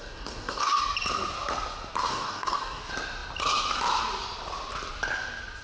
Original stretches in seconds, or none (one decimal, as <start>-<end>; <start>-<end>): 0.8-2.1; 2.8-5.6